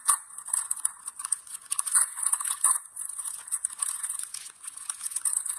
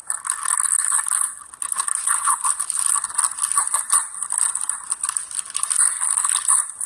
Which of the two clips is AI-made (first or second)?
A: first